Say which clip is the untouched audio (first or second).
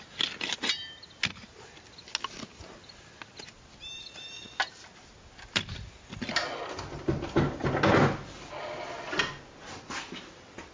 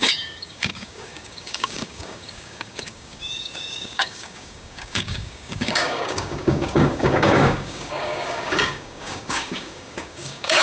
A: first